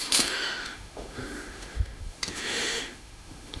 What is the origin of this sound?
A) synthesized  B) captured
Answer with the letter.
A